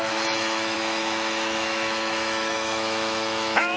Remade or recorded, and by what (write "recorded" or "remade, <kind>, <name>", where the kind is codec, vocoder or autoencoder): remade, autoencoder, DAC-VAE